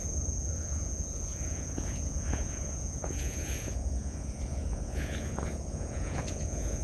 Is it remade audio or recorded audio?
remade